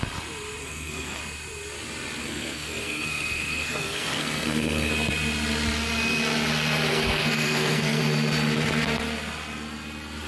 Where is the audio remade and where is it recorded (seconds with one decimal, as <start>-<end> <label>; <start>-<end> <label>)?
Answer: 0.0-0.6 recorded; 0.6-1.2 remade; 1.2-2.2 recorded; 2.2-4.9 remade; 4.9-6.9 recorded; 6.9-8.0 remade; 8.0-10.3 recorded